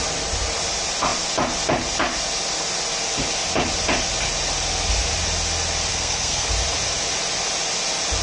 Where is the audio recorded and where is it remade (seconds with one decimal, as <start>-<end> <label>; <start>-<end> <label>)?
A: 0.0-5.9 recorded; 5.9-6.5 remade; 6.5-8.2 recorded